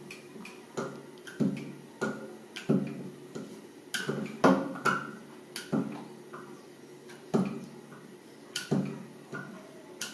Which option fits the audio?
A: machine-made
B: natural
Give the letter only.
B